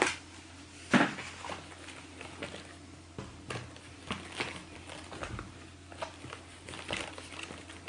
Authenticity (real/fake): real